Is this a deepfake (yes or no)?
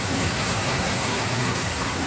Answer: yes